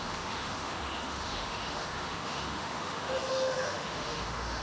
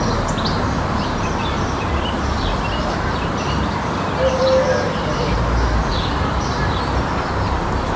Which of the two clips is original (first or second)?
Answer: second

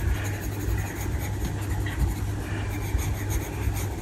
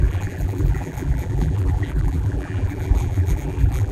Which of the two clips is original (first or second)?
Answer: first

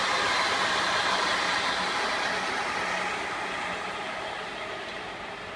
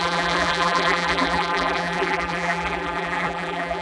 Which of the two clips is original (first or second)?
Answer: first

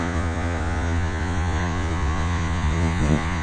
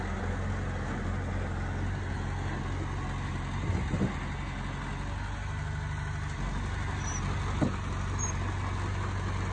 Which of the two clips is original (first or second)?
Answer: second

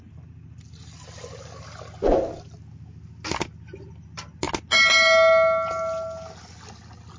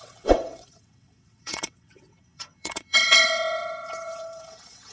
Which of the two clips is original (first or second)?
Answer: first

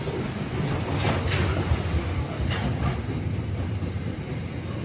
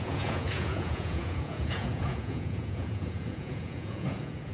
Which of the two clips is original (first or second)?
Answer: first